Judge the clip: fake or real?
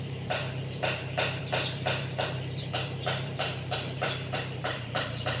fake